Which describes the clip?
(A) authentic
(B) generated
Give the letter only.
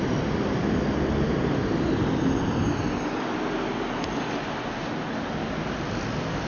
A